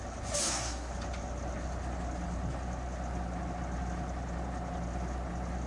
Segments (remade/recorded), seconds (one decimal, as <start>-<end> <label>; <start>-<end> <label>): 0.0-0.4 recorded; 0.4-0.9 remade; 0.9-5.7 recorded